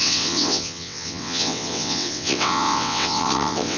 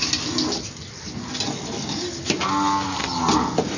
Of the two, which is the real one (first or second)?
second